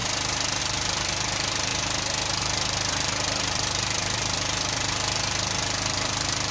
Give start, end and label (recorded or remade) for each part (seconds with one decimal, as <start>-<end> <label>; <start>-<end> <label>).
0.0-0.6 recorded; 0.6-1.7 remade; 1.7-2.4 recorded; 2.4-6.5 remade